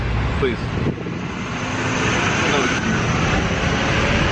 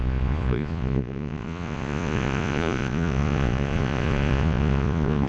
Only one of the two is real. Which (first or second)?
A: first